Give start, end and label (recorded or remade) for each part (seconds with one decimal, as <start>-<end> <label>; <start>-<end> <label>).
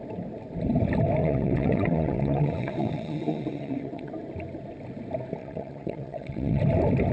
0.0-1.2 recorded; 1.2-4.1 remade; 4.1-5.4 recorded; 5.4-6.6 remade; 6.6-7.1 recorded